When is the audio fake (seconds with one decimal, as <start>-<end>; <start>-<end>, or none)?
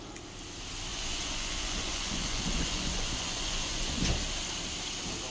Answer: 0.9-4.1